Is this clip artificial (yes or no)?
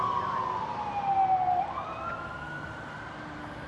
no